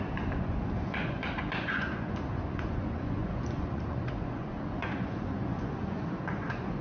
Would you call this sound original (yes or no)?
no